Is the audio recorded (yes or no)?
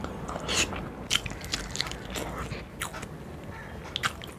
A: yes